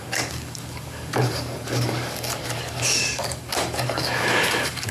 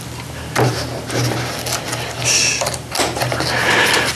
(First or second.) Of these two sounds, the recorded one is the second